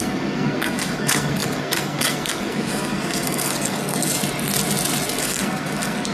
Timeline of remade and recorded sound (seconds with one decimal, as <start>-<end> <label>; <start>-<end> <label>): 0.0-4.2 remade; 4.2-5.2 recorded; 5.2-6.1 remade